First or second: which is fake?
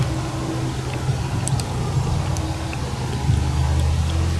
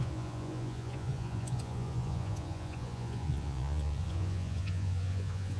second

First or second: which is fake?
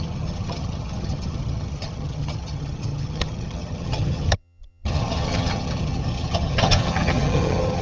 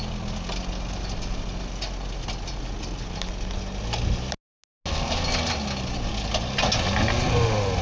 first